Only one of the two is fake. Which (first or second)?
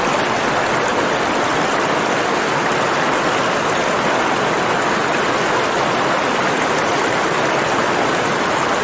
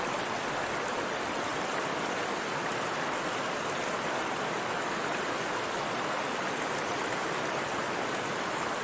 second